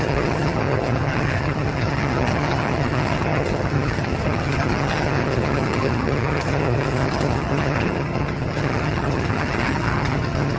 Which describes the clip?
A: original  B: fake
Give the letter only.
B